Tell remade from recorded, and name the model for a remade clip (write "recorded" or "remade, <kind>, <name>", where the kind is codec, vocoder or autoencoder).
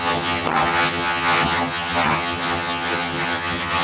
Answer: remade, vocoder, HiFi-GAN